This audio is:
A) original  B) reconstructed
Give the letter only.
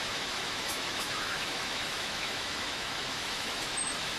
B